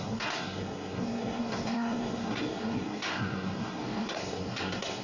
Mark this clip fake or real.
fake